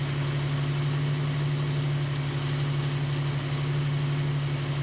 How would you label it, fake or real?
real